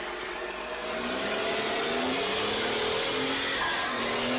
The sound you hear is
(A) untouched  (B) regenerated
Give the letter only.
A